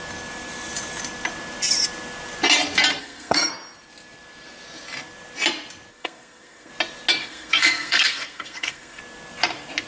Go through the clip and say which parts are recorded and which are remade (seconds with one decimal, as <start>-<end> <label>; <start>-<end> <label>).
0.0-3.0 recorded; 3.0-3.5 remade; 3.5-5.9 recorded; 5.9-6.7 remade; 6.7-7.2 recorded; 7.2-9.0 remade; 9.0-9.9 recorded

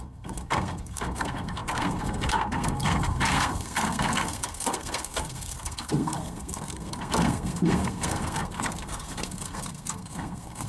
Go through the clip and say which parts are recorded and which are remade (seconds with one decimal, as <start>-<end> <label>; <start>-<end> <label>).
0.0-10.7 remade